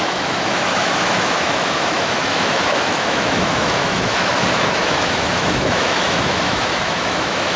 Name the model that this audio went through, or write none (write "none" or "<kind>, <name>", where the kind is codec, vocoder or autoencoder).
autoencoder, DAC-VAE